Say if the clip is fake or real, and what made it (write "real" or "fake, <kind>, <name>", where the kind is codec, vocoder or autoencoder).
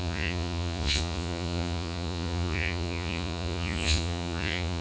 fake, vocoder, Vocos